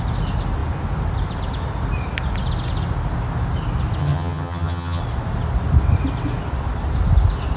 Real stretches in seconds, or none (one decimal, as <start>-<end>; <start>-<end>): 0.0-4.0; 5.0-7.6